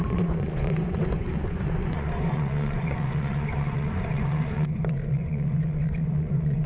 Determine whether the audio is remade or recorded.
remade